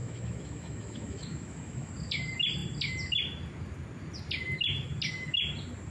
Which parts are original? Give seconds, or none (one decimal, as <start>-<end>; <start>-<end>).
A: 1.9-5.9